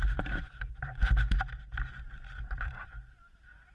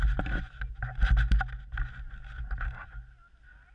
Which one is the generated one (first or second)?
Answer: first